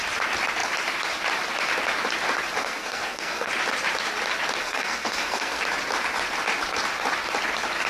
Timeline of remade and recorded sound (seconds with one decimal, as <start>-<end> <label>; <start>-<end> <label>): 0.0-2.6 recorded; 2.6-3.5 remade; 3.5-4.6 recorded; 4.6-5.6 remade; 5.6-7.9 recorded